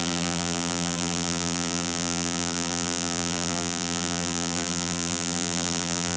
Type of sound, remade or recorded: remade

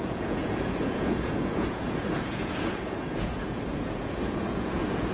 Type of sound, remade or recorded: remade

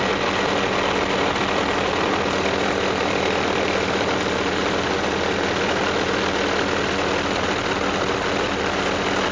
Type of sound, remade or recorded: recorded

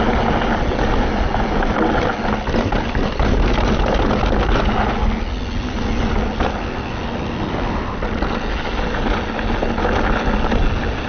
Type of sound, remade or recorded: recorded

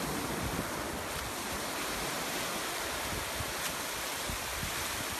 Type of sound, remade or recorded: recorded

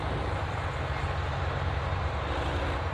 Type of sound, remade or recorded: recorded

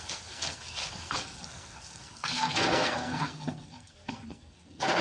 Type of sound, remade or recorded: remade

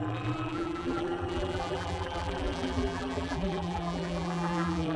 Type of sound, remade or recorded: remade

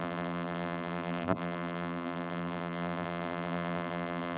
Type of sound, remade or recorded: remade